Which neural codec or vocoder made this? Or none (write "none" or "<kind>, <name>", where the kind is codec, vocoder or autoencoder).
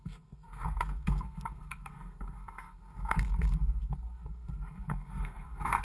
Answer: codec, SNAC